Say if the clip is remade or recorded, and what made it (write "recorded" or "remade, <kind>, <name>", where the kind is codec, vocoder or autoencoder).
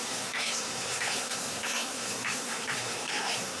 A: remade, codec, SNAC